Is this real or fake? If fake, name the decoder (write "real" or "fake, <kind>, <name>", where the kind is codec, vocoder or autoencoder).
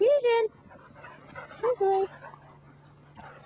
real